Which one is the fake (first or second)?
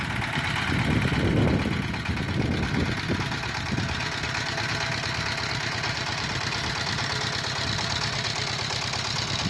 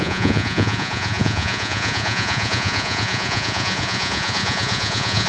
second